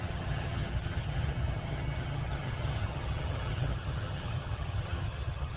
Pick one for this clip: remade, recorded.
remade